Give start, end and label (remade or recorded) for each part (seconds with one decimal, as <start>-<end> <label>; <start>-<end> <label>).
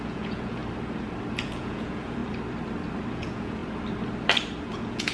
0.0-0.6 remade; 0.6-1.4 recorded; 1.4-2.2 remade; 2.2-3.1 recorded; 3.1-3.6 remade; 3.6-4.6 recorded; 4.6-5.1 remade